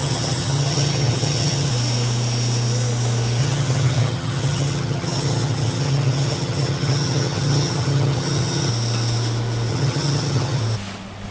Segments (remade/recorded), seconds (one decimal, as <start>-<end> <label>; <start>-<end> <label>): 0.0-1.7 remade; 1.7-3.4 recorded; 3.4-8.7 remade; 8.7-9.7 recorded; 9.7-10.6 remade; 10.6-11.3 recorded